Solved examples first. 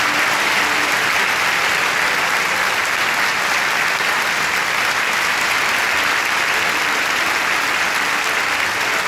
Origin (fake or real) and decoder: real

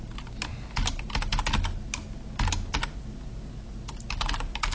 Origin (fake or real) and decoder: real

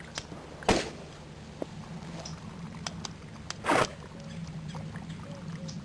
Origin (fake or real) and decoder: real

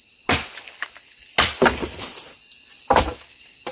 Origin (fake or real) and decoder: real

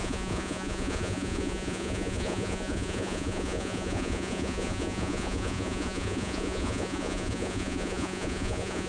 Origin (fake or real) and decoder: fake, vocoder, Vocos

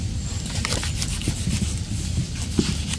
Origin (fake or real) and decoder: real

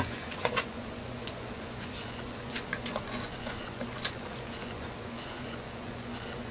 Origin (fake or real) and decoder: fake, vocoder, Vocos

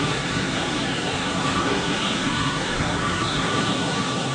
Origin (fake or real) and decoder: fake, codec, SNAC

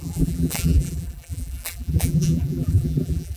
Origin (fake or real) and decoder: fake, vocoder, BigVGAN v2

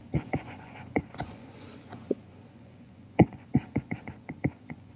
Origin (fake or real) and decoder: fake, vocoder, Vocos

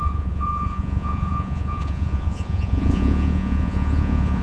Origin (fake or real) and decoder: fake, vocoder, Vocos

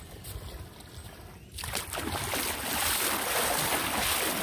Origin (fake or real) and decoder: real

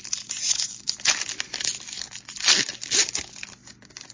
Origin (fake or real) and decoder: real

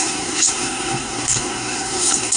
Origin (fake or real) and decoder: fake, codec, SNAC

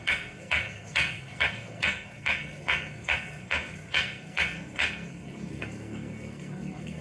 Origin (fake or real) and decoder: fake, codec, SNAC